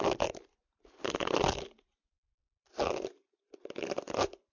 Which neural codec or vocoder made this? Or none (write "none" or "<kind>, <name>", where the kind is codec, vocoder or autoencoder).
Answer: none